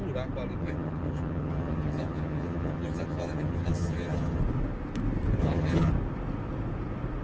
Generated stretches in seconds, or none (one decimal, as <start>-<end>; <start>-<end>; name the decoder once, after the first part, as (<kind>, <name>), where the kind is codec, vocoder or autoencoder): 0.6-4.4 (vocoder, HiFi-GAN); 5.4-5.9